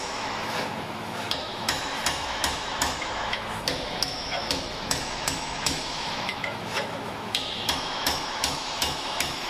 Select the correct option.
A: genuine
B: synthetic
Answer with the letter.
B